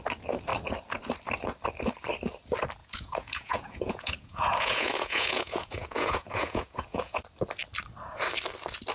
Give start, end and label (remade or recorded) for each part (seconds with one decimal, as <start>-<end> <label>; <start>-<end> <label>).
0.0-2.8 recorded; 2.8-7.2 remade; 7.2-8.9 recorded